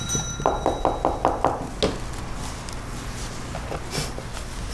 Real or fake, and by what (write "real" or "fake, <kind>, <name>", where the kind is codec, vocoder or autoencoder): real